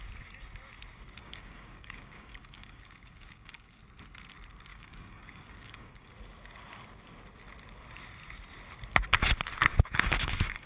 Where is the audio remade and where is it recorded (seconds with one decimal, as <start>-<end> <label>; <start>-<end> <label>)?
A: 0.0-1.2 recorded; 1.2-3.8 remade; 3.8-4.7 recorded; 4.7-6.1 remade; 6.1-9.7 recorded; 9.7-10.7 remade